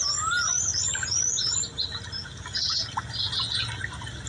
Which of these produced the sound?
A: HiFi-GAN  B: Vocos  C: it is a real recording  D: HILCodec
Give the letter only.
C